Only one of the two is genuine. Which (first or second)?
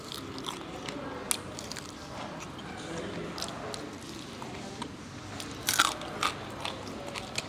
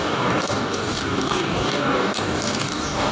first